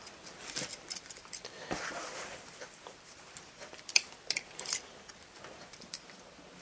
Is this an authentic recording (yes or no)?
yes